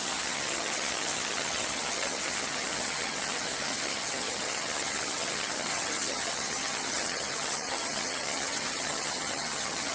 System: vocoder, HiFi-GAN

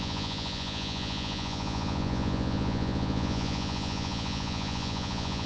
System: vocoder, Vocos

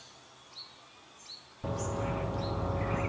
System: none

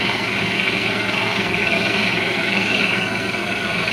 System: codec, SNAC